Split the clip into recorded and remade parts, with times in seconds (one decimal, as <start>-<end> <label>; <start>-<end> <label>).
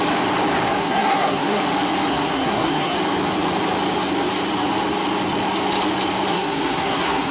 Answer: 0.0-0.8 recorded; 0.8-1.6 remade; 1.6-2.1 recorded; 2.1-3.0 remade; 3.0-6.3 recorded; 6.3-7.3 remade